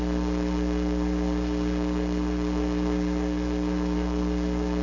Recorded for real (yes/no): no